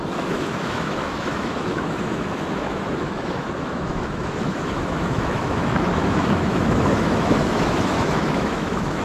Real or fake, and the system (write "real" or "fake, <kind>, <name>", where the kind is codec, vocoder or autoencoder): fake, autoencoder, DAC-VAE